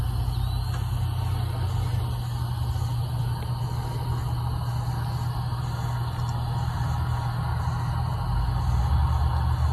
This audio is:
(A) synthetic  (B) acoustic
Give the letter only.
B